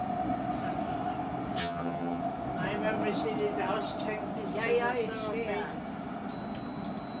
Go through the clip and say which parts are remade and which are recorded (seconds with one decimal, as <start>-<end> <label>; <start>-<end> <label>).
0.0-1.6 recorded; 1.6-2.2 remade; 2.2-7.2 recorded